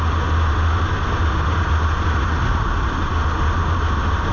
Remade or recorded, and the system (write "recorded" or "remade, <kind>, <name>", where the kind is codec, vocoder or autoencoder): recorded